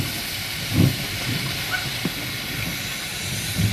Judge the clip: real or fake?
real